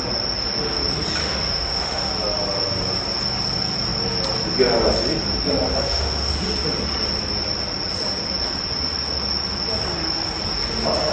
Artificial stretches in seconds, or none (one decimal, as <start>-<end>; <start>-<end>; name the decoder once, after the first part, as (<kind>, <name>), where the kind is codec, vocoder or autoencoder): 1.2-2.1 (autoencoder, DAC-VAE); 5.7-6.3